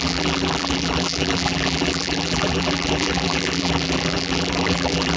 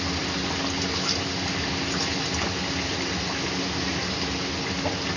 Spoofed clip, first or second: first